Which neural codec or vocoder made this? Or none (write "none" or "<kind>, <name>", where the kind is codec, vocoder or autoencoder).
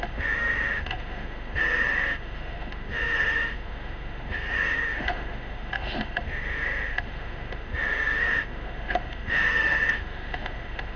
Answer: autoencoder, DAC-VAE